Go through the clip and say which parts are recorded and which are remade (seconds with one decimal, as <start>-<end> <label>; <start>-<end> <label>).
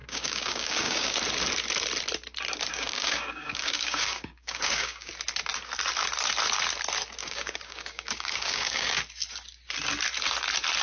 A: 0.0-1.2 remade; 1.2-2.7 recorded; 2.7-5.1 remade; 5.1-7.2 recorded; 7.2-9.0 remade; 9.0-10.8 recorded